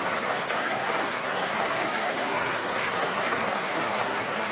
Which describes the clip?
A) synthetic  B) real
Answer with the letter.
A